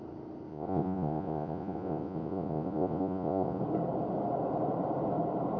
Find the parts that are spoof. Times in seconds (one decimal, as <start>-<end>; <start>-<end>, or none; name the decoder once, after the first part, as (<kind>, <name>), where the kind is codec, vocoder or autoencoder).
0.5-3.6 (vocoder, Vocos)